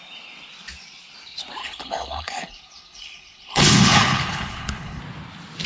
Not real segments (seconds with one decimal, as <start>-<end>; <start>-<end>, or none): 1.6-5.0